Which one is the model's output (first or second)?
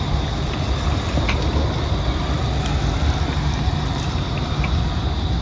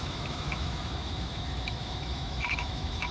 second